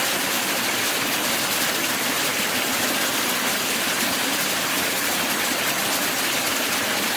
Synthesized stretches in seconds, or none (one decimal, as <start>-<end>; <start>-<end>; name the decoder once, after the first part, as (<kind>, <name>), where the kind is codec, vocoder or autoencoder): none